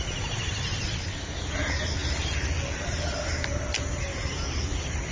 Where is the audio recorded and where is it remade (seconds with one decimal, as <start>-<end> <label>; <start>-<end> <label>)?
0.0-5.1 recorded